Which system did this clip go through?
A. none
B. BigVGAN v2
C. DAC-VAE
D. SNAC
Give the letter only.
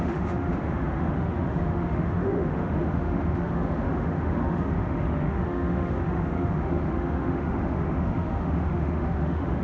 C